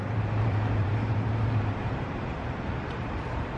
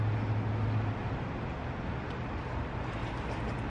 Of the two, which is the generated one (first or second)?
first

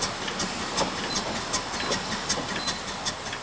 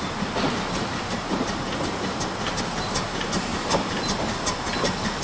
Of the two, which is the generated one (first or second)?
second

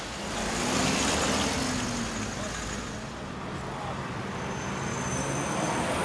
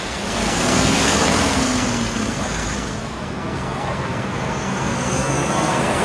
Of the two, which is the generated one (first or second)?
second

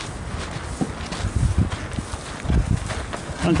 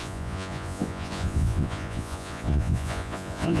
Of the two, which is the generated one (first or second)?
second